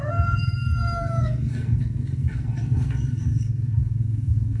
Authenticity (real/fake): fake